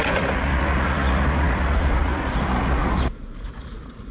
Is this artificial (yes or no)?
yes